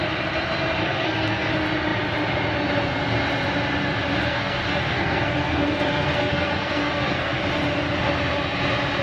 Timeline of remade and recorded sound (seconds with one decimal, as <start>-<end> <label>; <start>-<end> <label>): 0.0-0.8 recorded; 0.8-1.5 remade; 1.5-4.2 recorded; 4.2-7.4 remade; 7.4-9.0 recorded